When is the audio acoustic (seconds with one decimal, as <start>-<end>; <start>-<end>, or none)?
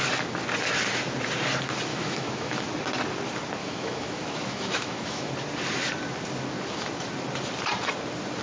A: 0.0-1.9; 2.6-3.6; 5.3-8.4